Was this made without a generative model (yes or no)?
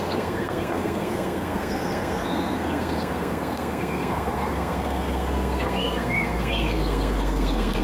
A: no